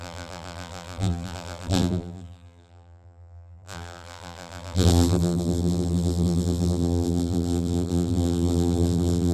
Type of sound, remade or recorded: remade